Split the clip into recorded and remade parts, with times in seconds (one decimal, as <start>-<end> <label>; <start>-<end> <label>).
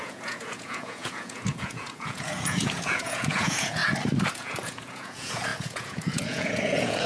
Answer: 0.0-3.8 remade; 3.8-4.3 recorded; 4.3-7.1 remade